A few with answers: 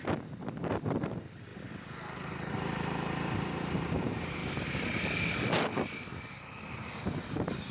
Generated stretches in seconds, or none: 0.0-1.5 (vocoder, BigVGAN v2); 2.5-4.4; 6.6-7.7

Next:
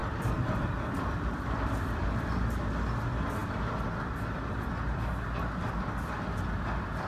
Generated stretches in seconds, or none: 0.0-2.0 (vocoder, BigVGAN v2)

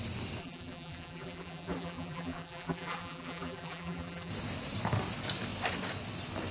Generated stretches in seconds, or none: 0.4-4.3 (vocoder, BigVGAN v2)

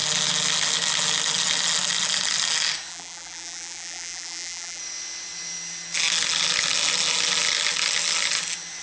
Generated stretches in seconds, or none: 2.9-4.8 (vocoder, BigVGAN v2)

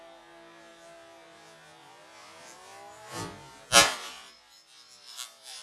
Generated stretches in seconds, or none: none

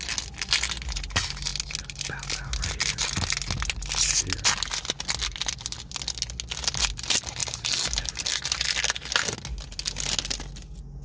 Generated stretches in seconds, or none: none